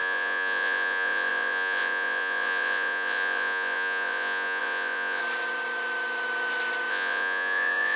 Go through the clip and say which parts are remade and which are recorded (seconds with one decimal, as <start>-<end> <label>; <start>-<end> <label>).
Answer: 0.0-5.2 remade; 5.2-6.9 recorded; 6.9-8.0 remade